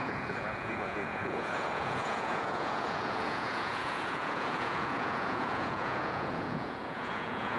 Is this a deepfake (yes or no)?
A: yes